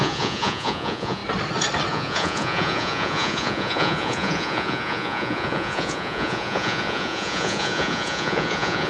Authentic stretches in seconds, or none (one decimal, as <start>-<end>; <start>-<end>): 1.2-1.9